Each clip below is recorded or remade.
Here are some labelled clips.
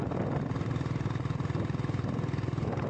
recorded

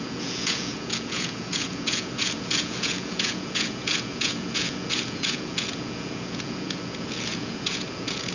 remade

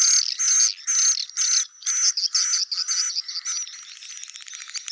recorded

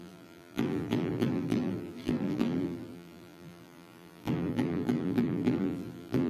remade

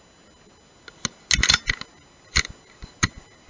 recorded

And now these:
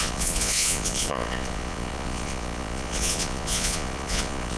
remade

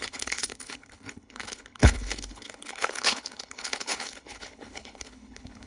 remade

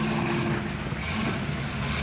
recorded